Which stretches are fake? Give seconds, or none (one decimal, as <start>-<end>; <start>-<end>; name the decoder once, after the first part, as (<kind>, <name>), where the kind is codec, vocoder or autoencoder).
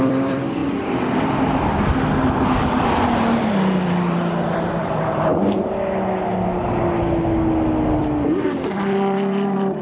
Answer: 0.0-0.6 (vocoder, BigVGAN v2); 2.4-5.3; 7.9-9.8